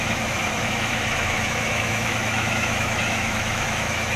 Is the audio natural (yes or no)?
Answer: no